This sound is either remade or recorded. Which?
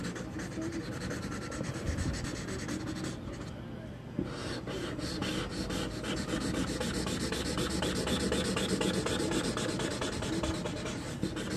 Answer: recorded